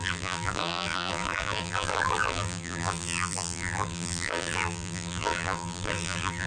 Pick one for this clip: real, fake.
fake